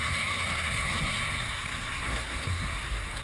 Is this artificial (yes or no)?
yes